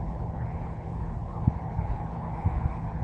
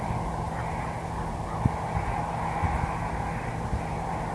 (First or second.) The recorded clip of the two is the second